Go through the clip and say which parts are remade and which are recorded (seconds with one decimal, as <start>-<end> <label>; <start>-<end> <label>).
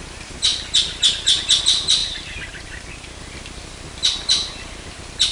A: 0.0-2.0 recorded; 2.0-3.2 remade; 3.2-5.3 recorded